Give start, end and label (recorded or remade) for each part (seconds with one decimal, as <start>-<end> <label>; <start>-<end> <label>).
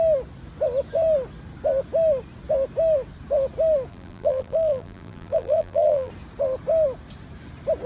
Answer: 0.0-3.9 recorded; 3.9-6.1 remade; 6.1-7.9 recorded